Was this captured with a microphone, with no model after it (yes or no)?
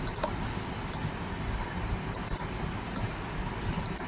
yes